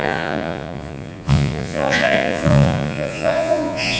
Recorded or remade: remade